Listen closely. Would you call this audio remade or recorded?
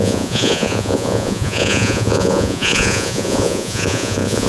remade